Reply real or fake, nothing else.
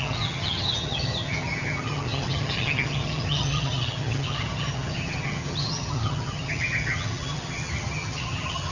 fake